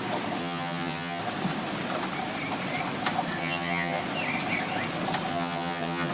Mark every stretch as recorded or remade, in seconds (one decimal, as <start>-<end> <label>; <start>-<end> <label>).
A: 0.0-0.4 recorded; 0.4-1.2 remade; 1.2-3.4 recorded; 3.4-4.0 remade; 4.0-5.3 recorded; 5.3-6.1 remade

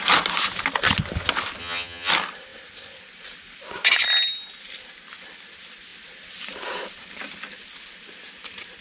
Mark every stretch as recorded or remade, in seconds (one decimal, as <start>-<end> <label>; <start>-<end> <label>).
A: 0.0-1.6 recorded; 1.6-2.1 remade; 2.1-8.8 recorded

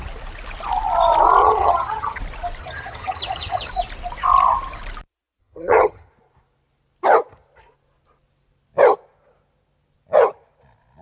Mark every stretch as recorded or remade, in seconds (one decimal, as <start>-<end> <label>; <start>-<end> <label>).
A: 0.0-1.4 recorded; 1.4-2.2 remade; 2.2-2.6 recorded; 2.6-3.7 remade; 3.7-5.4 recorded; 5.4-6.1 remade; 6.1-11.0 recorded

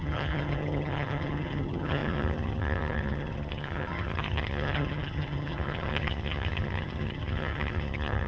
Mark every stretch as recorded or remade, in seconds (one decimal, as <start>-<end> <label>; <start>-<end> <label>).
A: 0.0-8.3 remade

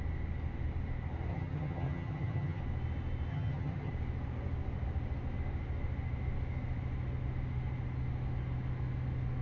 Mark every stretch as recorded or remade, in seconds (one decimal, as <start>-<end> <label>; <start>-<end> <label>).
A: 0.0-1.3 recorded; 1.3-2.6 remade; 2.6-3.3 recorded; 3.3-3.9 remade; 3.9-9.4 recorded